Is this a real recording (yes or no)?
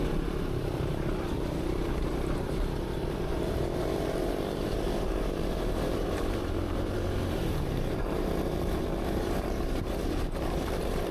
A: no